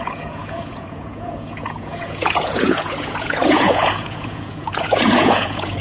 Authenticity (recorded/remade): remade